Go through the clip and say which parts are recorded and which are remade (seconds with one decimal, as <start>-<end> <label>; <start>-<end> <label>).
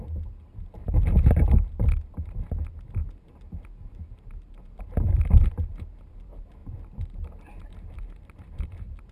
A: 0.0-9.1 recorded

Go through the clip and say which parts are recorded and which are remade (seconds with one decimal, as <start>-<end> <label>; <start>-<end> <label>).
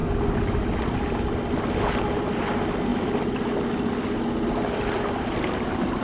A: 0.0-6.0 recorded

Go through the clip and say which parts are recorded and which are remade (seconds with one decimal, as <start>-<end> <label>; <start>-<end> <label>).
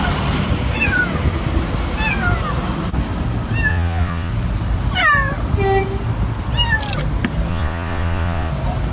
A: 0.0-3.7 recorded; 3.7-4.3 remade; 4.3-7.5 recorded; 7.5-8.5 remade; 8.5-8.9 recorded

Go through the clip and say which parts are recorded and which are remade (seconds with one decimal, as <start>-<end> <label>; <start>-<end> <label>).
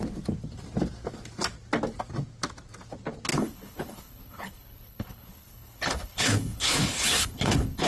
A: 0.0-3.3 recorded; 3.3-7.9 remade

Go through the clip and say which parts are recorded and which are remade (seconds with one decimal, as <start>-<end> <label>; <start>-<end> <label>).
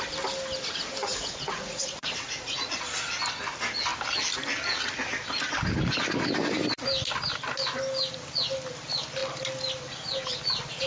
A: 0.0-1.0 recorded; 1.0-2.7 remade; 2.7-10.9 recorded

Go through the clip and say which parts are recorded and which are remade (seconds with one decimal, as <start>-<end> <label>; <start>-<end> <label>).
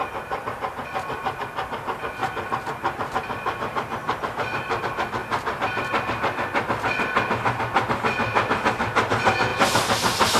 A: 0.0-2.2 recorded; 2.2-4.8 remade; 4.8-10.4 recorded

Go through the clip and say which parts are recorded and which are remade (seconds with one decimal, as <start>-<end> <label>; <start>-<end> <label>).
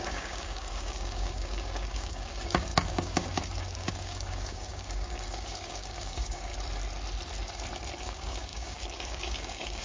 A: 0.0-6.5 remade; 6.5-8.0 recorded; 8.0-9.8 remade